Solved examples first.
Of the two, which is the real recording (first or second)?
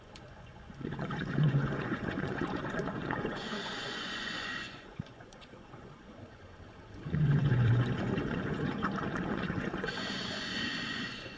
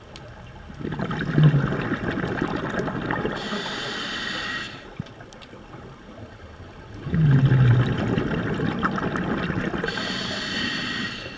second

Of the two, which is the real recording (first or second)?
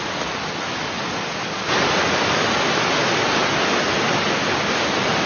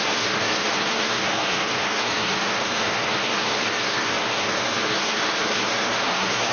first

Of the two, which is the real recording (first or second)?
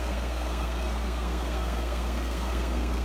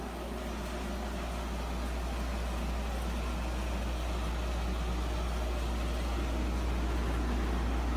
second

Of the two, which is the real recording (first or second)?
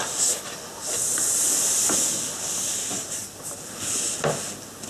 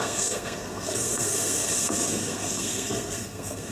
first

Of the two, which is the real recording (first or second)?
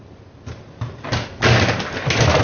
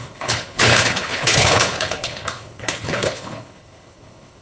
first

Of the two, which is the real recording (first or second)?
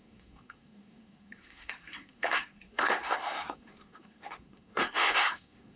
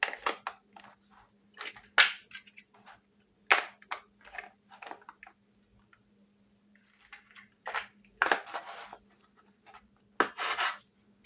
second